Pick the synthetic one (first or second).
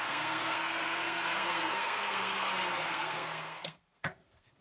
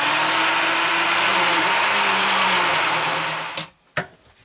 first